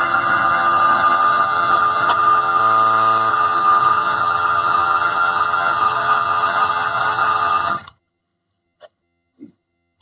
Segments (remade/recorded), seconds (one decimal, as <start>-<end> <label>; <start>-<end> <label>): 0.0-2.6 remade; 2.6-3.3 recorded; 3.3-10.0 remade